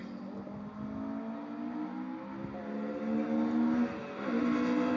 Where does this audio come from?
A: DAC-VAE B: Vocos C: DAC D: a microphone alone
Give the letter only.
D